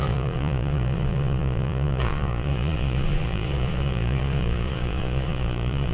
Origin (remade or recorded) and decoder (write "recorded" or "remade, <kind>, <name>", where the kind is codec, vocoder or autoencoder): remade, vocoder, Vocos